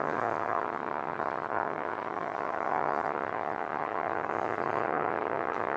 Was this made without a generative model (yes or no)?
no